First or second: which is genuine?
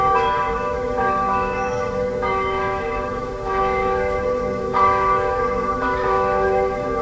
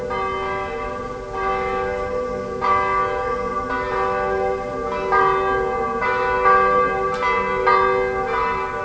second